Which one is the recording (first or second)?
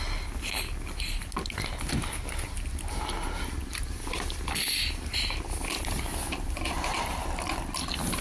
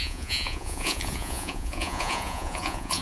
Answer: first